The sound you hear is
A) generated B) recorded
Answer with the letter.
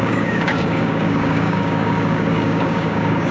A